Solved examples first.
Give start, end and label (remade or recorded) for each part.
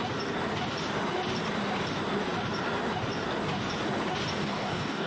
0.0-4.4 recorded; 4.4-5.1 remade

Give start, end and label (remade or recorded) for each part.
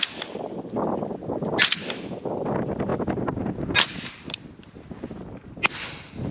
0.0-6.3 recorded